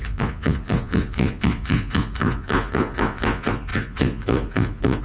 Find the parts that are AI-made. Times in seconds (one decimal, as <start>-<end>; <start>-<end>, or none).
0.0-5.0